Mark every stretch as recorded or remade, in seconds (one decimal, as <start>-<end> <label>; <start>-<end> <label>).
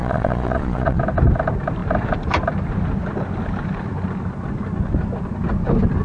0.0-1.0 remade; 1.0-6.0 recorded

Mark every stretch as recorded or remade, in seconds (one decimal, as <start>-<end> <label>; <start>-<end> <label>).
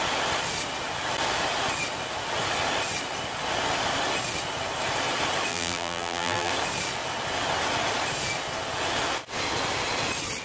0.0-5.5 recorded; 5.5-6.5 remade; 6.5-10.4 recorded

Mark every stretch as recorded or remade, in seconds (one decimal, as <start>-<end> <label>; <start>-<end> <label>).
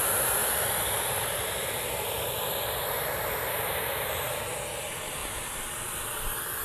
0.0-0.4 recorded; 0.4-4.4 remade; 4.4-5.2 recorded; 5.2-6.0 remade; 6.0-6.6 recorded